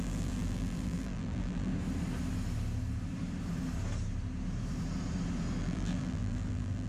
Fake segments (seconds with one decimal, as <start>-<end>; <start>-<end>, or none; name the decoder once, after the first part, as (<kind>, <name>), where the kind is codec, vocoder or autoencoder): 0.0-1.7 (vocoder, BigVGAN v2); 5.6-6.9